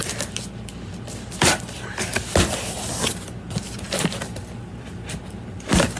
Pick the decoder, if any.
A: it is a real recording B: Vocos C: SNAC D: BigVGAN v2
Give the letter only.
A